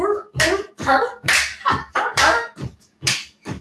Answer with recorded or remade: remade